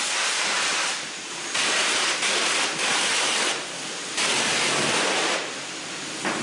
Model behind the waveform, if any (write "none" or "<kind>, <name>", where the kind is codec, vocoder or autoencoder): none